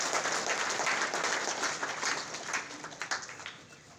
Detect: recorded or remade recorded